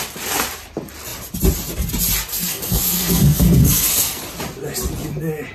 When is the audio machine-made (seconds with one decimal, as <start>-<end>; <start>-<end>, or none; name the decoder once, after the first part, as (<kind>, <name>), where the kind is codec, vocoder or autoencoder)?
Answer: 2.3-4.2 (codec, SNAC)